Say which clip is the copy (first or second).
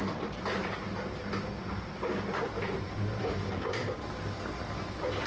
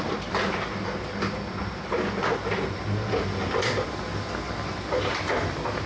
first